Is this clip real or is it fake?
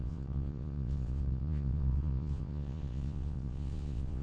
fake